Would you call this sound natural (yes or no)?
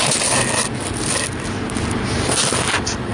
yes